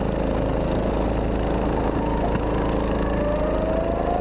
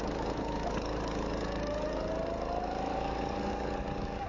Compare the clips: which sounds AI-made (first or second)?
second